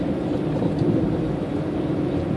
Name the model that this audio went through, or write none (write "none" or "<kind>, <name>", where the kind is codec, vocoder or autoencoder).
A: none